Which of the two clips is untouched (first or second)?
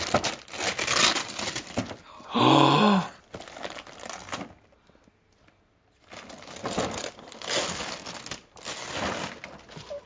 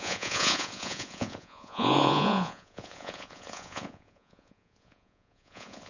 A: first